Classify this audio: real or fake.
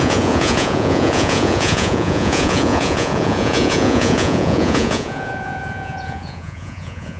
fake